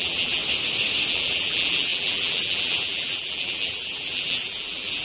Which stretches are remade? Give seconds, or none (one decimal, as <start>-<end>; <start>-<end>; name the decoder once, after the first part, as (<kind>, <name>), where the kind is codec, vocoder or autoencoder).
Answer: 0.0-0.4 (vocoder, BigVGAN v2); 1.1-5.0